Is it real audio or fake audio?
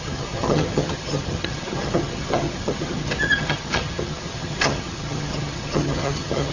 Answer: fake